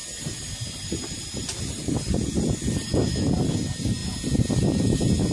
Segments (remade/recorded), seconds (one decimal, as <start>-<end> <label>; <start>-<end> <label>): 0.0-3.2 remade; 3.2-5.3 recorded